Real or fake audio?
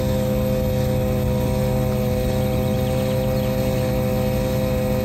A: real